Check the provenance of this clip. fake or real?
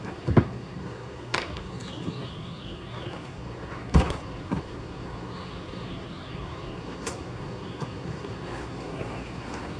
fake